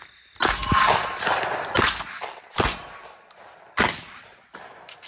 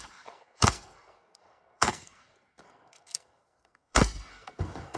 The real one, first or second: first